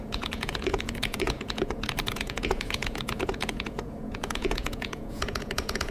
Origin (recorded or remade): remade